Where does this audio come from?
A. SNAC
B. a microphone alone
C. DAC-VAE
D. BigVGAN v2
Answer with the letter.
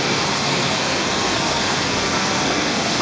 A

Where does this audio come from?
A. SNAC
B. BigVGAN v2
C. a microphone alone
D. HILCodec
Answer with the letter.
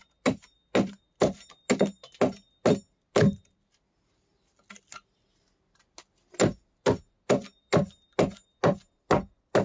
C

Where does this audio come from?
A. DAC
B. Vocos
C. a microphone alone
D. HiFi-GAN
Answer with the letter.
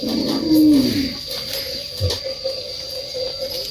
C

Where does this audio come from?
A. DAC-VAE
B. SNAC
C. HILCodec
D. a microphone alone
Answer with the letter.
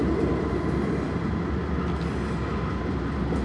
D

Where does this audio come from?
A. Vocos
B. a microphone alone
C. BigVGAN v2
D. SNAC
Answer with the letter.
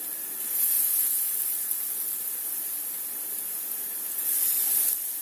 B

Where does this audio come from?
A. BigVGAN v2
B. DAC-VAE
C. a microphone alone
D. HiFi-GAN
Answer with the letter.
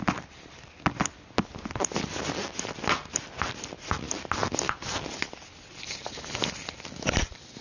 C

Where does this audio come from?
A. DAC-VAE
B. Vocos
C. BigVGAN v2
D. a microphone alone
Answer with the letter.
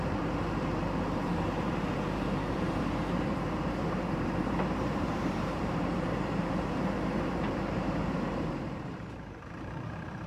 C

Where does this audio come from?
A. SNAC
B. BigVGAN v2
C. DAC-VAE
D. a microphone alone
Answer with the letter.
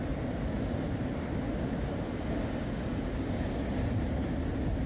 D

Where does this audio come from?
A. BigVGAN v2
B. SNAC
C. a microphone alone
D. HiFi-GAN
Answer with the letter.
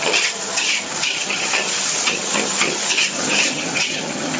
D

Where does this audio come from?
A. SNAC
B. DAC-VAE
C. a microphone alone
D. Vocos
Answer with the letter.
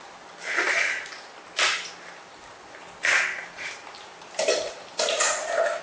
C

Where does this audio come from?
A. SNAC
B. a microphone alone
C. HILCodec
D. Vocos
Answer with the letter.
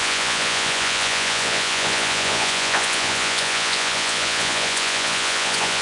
D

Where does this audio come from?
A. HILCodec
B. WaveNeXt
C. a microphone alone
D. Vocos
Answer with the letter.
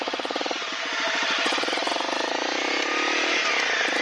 C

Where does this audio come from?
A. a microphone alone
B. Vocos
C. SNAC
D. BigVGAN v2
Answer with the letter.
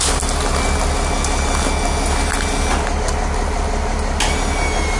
A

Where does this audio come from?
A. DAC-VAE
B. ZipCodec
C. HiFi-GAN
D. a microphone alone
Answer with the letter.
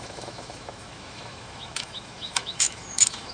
A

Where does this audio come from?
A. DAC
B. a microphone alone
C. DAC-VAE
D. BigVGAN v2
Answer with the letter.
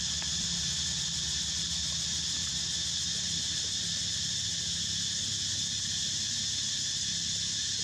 B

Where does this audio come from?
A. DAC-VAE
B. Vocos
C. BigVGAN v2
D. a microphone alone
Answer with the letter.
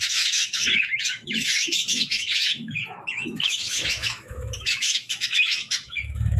A